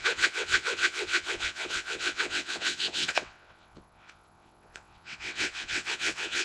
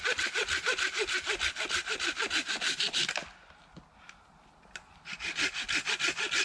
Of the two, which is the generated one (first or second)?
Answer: first